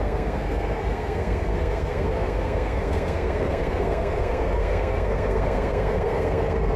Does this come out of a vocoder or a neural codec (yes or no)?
yes